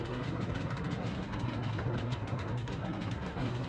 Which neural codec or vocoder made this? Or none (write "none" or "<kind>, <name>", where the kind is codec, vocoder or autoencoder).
codec, SNAC